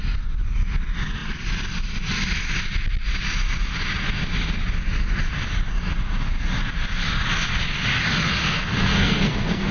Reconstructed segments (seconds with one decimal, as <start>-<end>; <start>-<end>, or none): 8.4-9.7